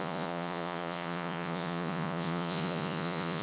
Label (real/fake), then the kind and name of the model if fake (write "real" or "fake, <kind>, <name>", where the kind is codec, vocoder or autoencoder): fake, vocoder, Vocos